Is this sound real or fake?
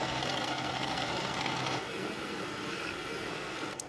fake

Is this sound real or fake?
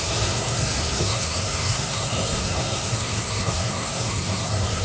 fake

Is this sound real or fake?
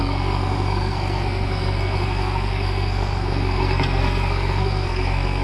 fake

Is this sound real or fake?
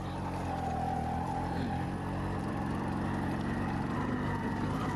real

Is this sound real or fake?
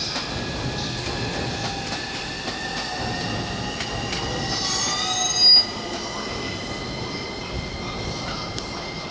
real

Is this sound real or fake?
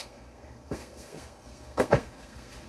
fake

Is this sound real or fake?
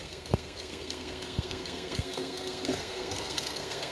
fake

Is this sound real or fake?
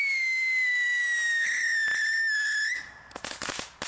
real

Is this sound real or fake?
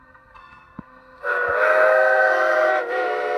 fake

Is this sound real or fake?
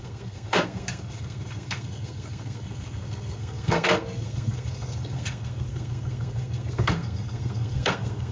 fake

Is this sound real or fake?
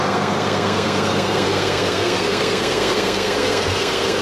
fake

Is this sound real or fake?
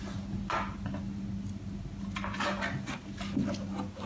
real